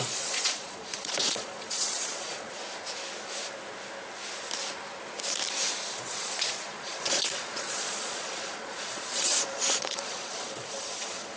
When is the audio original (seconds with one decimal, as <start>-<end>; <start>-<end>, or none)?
2.6-5.9